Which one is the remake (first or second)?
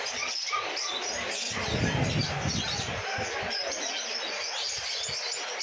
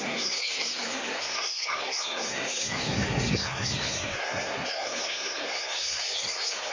second